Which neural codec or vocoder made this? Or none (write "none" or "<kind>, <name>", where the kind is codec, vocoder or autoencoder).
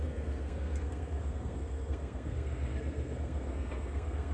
codec, SNAC